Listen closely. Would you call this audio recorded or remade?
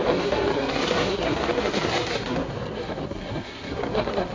remade